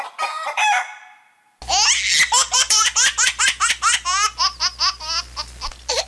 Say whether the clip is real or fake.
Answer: real